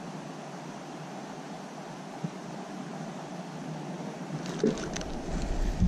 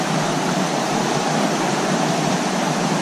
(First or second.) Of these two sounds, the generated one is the second